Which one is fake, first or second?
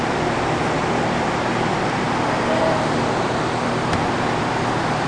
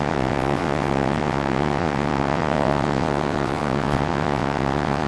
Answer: second